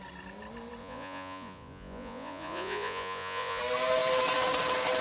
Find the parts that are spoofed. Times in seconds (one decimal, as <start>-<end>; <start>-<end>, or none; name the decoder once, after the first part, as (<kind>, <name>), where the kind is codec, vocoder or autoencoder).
0.8-3.6 (vocoder, Vocos)